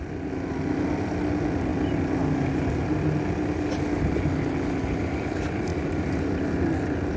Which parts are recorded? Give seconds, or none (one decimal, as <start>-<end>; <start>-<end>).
0.0-5.7; 6.5-7.2